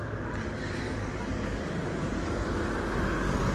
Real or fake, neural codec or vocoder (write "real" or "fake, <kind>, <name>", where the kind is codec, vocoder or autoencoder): fake, codec, DAC